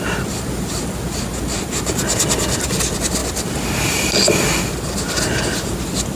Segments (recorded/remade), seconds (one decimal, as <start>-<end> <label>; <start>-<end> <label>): 0.0-6.2 recorded